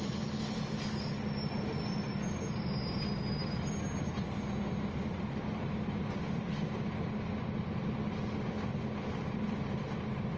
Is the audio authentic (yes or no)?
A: yes